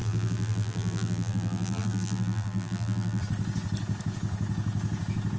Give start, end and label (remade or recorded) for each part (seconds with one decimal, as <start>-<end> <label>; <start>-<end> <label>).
0.0-3.2 remade; 3.2-5.4 recorded